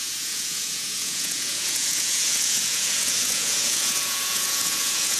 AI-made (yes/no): yes